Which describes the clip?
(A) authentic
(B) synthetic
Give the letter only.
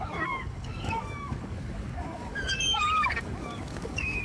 B